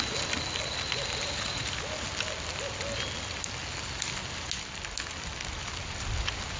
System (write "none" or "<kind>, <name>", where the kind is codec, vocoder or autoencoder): none